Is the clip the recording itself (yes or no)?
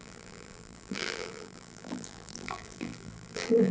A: no